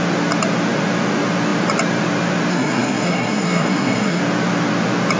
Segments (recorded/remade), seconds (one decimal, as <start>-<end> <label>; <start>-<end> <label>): 0.0-2.5 recorded; 2.5-4.2 remade; 4.2-5.2 recorded